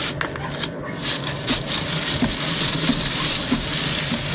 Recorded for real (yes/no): yes